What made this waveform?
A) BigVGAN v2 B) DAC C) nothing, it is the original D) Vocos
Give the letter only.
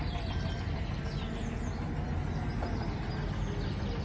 C